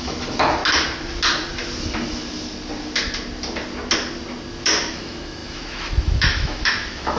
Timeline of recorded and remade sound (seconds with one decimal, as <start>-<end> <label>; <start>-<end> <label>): 0.0-0.6 remade; 0.6-4.9 recorded; 4.9-7.2 remade